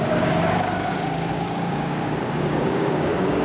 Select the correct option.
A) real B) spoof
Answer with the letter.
B